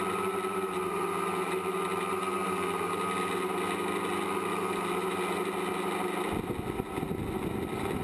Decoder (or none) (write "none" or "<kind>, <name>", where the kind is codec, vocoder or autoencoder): none